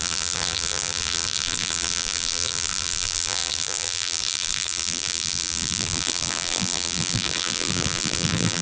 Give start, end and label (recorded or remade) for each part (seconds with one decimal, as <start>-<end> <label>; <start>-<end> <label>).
0.0-8.6 remade